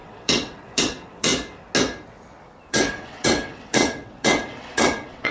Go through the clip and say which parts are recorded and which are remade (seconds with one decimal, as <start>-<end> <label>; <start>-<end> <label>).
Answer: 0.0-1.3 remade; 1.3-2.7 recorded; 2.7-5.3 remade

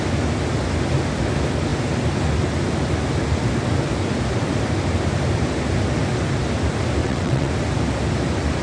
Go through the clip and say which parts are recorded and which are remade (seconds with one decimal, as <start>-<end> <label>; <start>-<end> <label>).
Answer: 0.0-7.0 recorded; 7.0-7.5 remade; 7.5-8.6 recorded

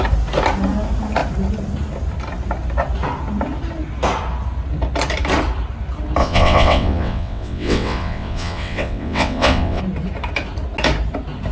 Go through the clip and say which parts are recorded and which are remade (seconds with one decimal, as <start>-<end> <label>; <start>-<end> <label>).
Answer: 0.0-6.2 recorded; 6.2-9.8 remade; 9.8-11.5 recorded

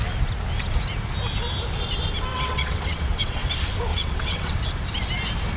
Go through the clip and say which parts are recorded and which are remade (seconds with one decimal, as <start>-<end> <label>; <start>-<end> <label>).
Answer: 0.0-2.3 recorded; 2.3-3.5 remade; 3.5-3.9 recorded; 3.9-4.5 remade; 4.5-5.6 recorded

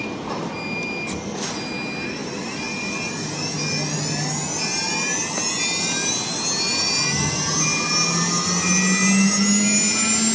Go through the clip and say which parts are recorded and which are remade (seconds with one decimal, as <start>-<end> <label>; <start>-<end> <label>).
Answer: 0.0-10.3 recorded

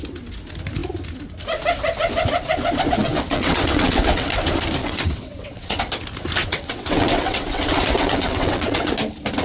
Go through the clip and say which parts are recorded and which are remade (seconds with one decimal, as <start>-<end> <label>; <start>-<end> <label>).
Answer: 0.0-3.0 recorded; 3.0-4.3 remade; 4.3-4.8 recorded; 4.8-5.8 remade; 5.8-6.4 recorded; 6.4-8.9 remade; 8.9-9.4 recorded